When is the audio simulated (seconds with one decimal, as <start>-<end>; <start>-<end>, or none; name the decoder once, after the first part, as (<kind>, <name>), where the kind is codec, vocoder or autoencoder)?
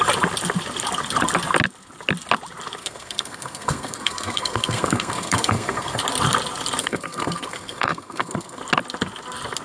2.8-6.0 (codec, SNAC); 6.8-8.6